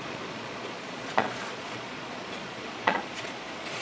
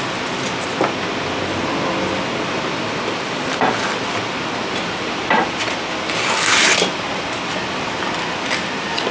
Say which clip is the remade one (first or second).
first